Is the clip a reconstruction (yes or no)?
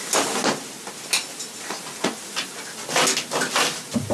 no